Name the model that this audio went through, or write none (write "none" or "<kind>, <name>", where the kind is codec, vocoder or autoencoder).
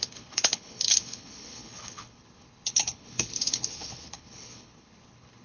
codec, HILCodec